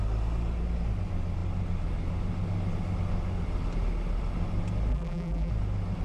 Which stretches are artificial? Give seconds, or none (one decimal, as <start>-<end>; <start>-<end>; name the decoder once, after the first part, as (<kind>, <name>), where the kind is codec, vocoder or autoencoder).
4.9-5.5 (vocoder, BigVGAN v2)